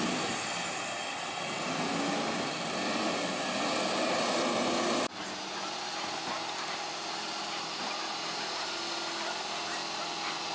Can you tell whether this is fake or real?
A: real